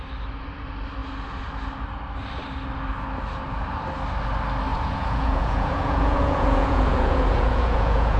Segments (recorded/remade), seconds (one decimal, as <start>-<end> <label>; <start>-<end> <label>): 0.0-4.7 recorded; 4.7-8.2 remade